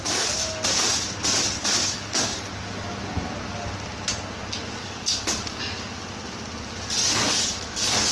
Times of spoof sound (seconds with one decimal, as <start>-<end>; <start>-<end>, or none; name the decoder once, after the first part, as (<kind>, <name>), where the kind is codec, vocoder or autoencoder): 1.8-2.5 (codec, DAC); 4.8-5.6; 7.0-8.1